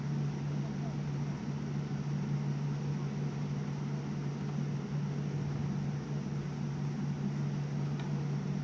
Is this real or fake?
real